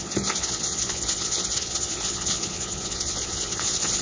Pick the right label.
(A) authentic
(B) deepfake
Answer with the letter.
B